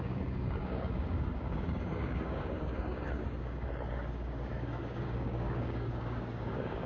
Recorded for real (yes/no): no